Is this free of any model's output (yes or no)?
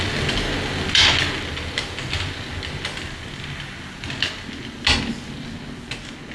yes